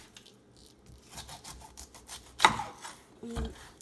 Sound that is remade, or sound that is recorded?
recorded